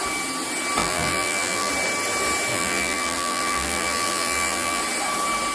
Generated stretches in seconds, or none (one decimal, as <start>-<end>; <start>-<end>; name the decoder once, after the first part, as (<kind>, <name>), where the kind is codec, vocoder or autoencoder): 0.8-1.7 (vocoder, BigVGAN v2); 2.5-4.8